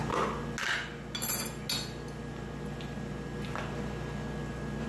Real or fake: real